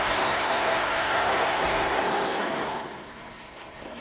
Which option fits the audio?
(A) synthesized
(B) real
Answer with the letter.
A